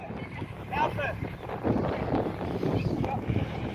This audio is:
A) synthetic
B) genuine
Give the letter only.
A